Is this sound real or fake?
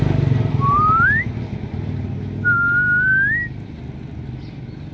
real